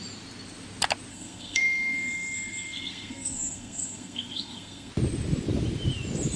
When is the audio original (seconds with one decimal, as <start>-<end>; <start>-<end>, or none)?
0.0-1.1; 4.9-6.4